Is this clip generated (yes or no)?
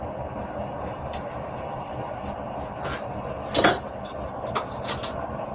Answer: no